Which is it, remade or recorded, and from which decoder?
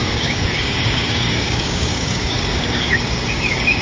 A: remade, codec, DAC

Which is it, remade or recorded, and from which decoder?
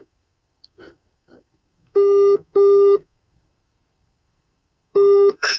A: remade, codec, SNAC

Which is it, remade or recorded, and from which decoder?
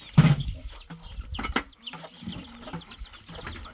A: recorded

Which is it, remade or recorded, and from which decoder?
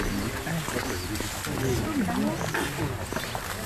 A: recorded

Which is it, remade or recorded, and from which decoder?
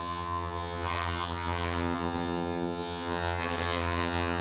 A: remade, vocoder, HiFi-GAN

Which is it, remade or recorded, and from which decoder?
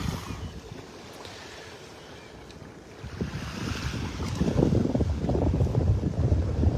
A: recorded